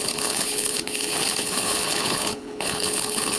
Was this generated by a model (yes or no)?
yes